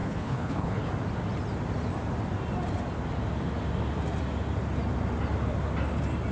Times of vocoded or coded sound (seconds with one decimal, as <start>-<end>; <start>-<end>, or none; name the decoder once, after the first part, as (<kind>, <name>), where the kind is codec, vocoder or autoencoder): 0.0-0.9 (codec, HILCodec)